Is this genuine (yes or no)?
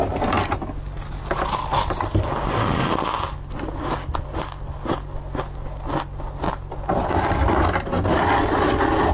yes